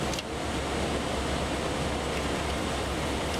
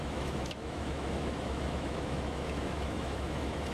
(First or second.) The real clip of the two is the first